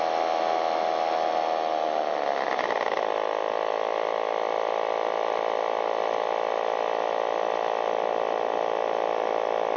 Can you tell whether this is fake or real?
real